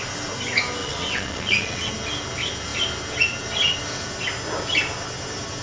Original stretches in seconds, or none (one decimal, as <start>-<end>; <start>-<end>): 0.0-0.8; 1.9-5.6